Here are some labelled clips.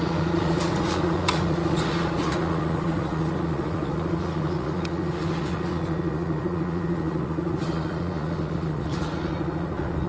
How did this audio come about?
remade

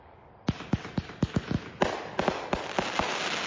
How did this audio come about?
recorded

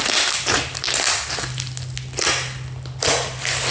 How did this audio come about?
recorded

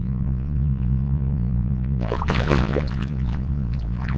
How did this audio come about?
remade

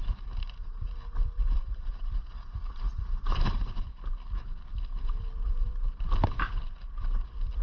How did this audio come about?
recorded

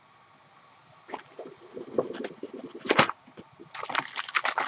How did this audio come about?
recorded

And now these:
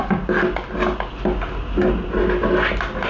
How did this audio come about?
recorded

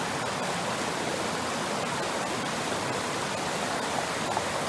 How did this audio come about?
recorded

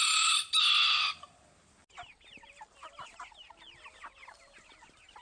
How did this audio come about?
recorded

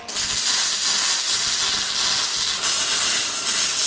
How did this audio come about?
recorded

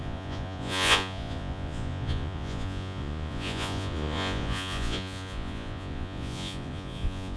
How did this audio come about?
remade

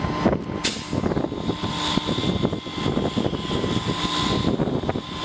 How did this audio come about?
recorded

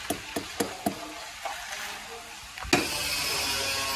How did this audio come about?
recorded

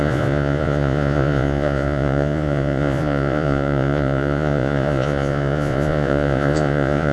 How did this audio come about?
remade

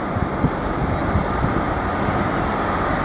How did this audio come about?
recorded